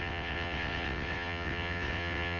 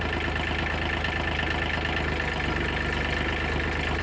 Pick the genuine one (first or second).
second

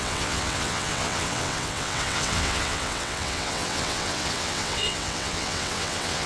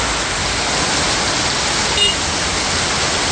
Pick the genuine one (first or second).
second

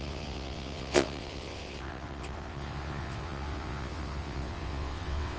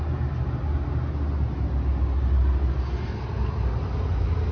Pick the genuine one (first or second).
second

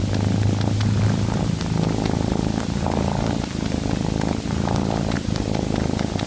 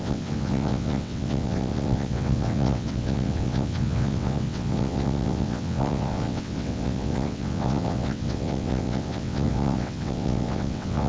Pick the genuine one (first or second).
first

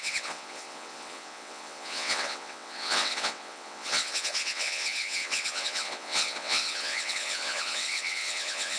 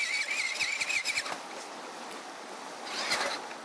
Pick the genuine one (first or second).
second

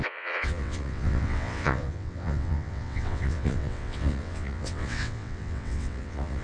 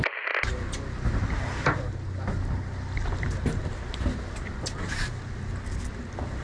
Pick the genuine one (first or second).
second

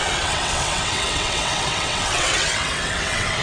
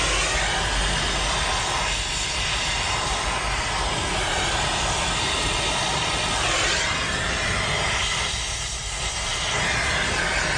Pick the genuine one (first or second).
second